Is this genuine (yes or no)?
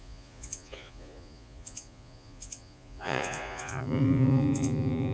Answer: no